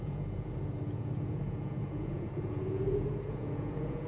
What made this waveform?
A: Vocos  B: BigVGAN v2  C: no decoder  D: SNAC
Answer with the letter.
A